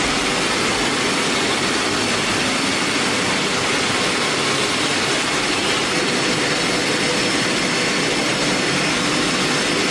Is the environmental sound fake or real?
real